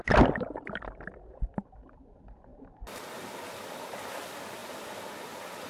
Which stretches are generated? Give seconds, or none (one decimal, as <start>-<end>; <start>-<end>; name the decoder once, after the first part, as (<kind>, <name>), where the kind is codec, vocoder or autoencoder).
4.6-5.3 (vocoder, BigVGAN v2)